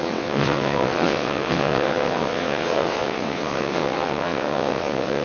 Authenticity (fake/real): fake